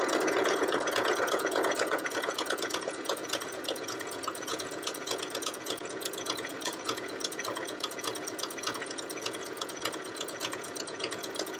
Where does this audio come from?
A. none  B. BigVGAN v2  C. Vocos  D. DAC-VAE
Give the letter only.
C